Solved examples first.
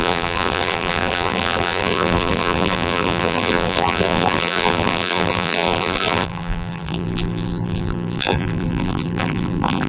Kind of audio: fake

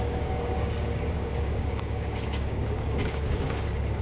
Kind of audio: fake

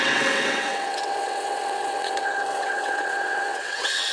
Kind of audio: fake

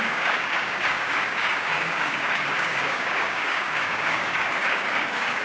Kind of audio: fake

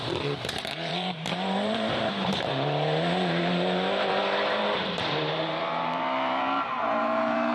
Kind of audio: fake